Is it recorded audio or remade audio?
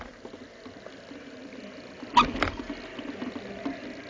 recorded